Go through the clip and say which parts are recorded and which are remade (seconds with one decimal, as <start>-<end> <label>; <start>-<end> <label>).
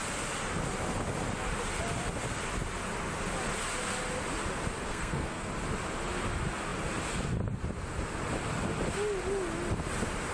0.0-4.9 recorded; 4.9-5.5 remade; 5.5-10.3 recorded